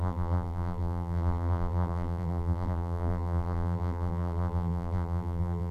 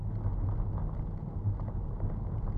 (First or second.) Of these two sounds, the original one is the second